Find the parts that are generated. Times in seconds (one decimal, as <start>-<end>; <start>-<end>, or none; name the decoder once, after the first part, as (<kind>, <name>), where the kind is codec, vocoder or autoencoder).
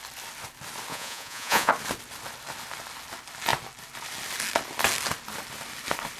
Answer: 0.9-1.7 (vocoder, Vocos)